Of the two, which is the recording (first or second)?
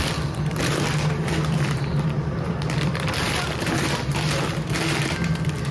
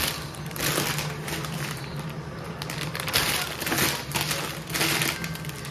second